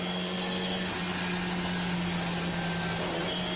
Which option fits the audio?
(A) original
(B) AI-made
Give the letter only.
A